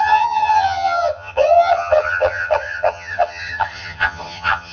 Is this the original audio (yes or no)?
no